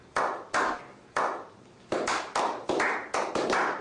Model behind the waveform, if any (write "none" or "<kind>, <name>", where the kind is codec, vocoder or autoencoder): none